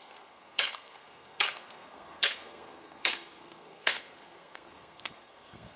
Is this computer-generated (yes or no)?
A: yes